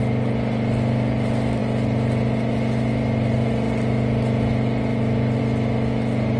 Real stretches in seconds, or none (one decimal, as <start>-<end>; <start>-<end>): 0.0-6.4

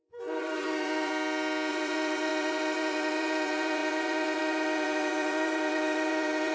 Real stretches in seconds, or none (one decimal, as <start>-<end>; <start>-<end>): 1.1-1.7

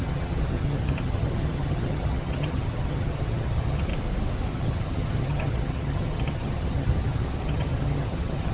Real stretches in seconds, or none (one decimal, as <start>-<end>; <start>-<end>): 3.9-4.5

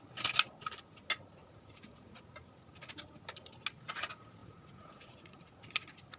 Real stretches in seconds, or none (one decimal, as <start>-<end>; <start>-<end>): 0.0-1.4; 2.2-4.4; 5.6-6.2

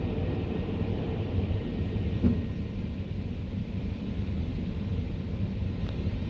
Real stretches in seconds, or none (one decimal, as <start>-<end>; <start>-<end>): 0.0-0.9; 3.0-3.6

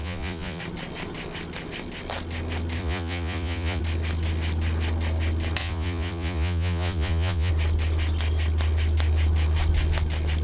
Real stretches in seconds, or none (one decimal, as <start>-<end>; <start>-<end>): 0.6-2.8; 3.8-5.6; 7.5-10.4

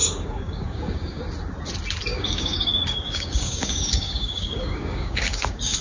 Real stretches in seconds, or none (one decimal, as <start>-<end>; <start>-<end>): 1.2-2.1